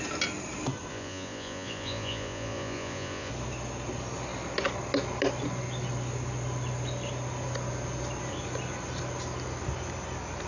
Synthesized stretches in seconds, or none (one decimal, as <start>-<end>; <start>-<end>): 0.9-3.3